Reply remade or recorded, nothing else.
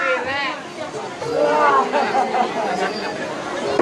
recorded